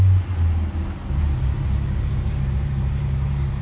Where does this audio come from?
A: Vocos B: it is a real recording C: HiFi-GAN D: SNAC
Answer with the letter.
B